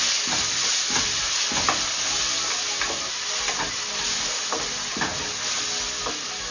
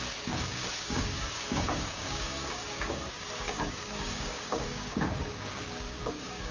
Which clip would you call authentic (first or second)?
first